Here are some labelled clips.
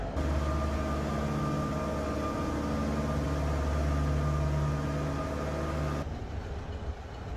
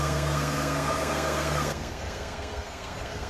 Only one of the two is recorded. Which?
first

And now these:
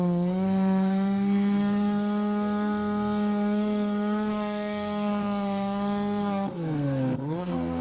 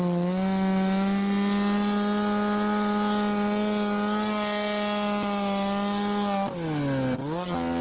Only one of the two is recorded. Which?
second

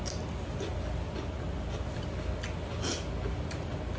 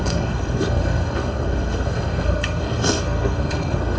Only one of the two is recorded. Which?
first